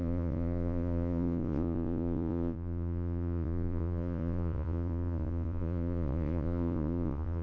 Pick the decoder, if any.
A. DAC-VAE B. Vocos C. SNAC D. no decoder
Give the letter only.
B